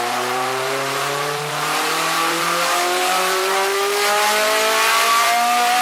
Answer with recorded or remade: remade